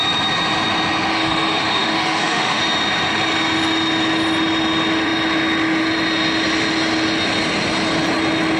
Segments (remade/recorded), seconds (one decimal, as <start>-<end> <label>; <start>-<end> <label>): 0.0-1.1 recorded; 1.1-2.6 remade; 2.6-8.6 recorded